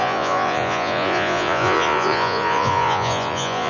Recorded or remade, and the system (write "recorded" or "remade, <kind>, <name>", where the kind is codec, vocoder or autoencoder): remade, vocoder, Vocos